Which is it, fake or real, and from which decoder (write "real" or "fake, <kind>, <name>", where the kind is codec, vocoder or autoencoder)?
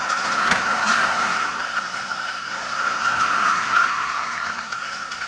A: fake, codec, SNAC